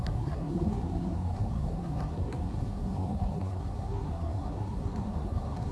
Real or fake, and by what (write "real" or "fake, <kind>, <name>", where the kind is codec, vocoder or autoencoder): fake, codec, SNAC